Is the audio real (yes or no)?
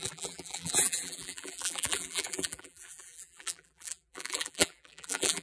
no